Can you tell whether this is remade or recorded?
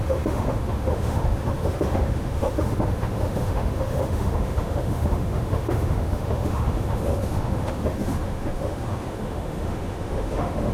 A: remade